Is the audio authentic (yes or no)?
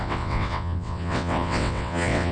no